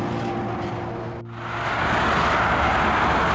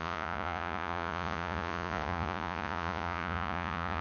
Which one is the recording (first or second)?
first